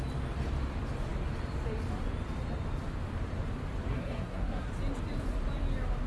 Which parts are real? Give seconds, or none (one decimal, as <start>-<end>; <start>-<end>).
0.0-3.9; 4.7-6.1